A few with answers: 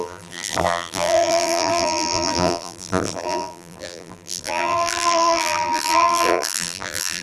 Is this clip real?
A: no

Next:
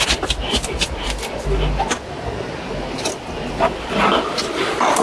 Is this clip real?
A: yes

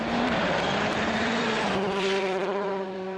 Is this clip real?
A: no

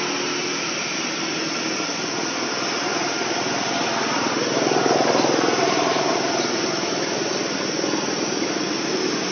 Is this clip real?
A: yes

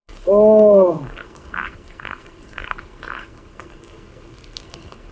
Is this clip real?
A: no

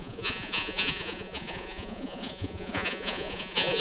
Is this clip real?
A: no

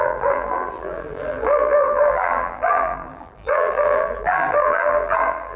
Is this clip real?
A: no